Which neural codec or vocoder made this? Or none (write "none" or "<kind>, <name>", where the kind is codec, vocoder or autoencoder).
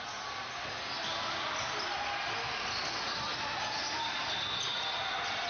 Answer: none